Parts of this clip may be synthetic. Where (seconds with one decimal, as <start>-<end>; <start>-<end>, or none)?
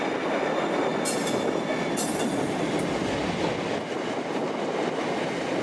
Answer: none